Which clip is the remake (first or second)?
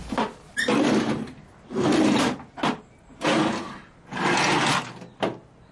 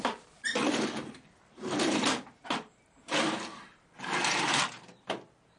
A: second